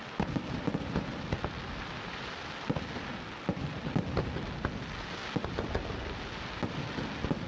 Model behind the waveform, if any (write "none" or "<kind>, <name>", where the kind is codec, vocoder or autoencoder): none